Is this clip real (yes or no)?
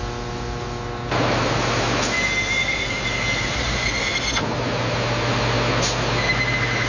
yes